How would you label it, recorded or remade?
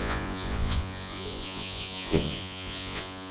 remade